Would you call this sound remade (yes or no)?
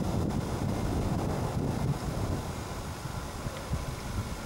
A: no